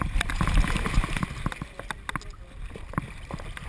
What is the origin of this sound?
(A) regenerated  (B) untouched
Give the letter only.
B